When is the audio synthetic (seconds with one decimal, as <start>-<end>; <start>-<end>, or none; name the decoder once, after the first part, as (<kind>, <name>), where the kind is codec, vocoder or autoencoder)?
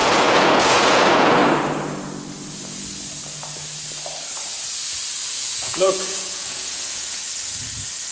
0.0-1.4 (vocoder, Vocos); 5.2-7.2